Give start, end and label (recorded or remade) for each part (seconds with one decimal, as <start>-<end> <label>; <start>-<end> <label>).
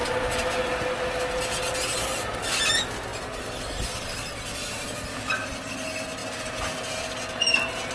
0.0-7.9 recorded